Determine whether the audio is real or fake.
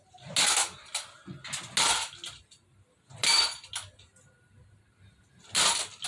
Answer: real